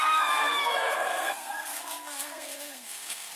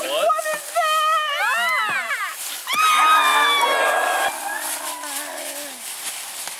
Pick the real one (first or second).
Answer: second